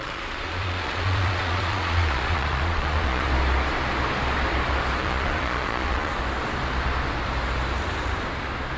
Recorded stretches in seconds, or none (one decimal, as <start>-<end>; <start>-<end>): 3.3-5.0; 6.1-8.8